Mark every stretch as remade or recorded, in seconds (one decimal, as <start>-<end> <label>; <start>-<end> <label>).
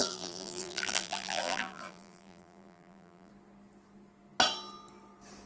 0.0-3.3 remade; 3.3-5.5 recorded